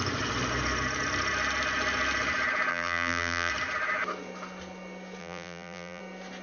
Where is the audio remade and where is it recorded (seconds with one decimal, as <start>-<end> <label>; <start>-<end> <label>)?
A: 0.0-2.7 recorded; 2.7-3.5 remade; 3.5-5.2 recorded; 5.2-6.0 remade; 6.0-6.4 recorded